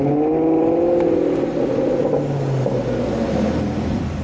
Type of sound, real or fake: real